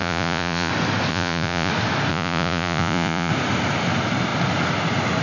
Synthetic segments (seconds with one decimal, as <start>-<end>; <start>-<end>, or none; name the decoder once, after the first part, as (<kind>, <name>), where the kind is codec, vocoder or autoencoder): 0.0-0.7 (vocoder, Vocos); 1.1-1.7; 2.1-3.3

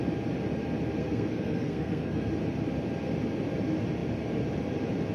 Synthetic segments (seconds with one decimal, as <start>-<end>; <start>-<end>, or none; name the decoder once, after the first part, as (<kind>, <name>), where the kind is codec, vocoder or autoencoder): 1.0-2.3 (codec, SNAC)